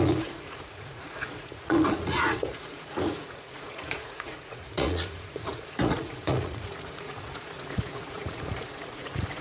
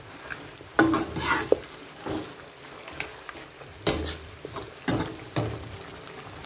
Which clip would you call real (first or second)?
second